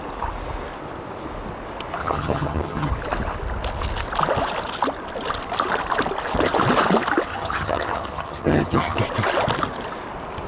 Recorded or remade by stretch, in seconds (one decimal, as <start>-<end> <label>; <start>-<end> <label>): 0.0-2.0 recorded; 2.0-2.9 remade; 2.9-7.3 recorded; 7.3-9.0 remade; 9.0-10.5 recorded